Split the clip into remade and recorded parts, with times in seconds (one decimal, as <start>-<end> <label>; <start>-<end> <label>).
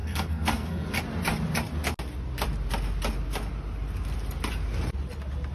0.0-0.9 remade; 0.9-5.5 recorded